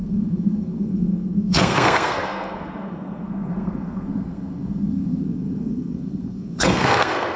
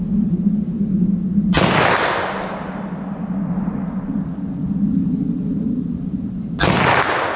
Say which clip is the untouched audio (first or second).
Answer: second